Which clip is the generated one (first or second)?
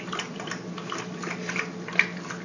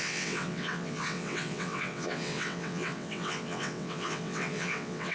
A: second